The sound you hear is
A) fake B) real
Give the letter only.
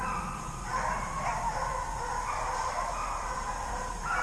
B